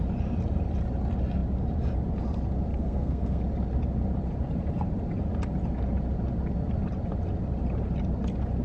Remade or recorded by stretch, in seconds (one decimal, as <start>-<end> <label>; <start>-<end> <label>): 0.0-2.7 recorded; 2.7-3.4 remade; 3.4-8.6 recorded